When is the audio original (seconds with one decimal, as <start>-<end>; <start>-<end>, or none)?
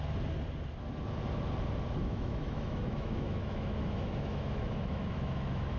0.0-2.0